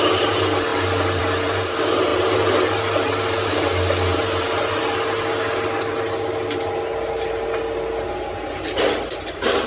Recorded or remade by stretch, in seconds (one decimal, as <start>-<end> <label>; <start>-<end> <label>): 0.0-9.7 recorded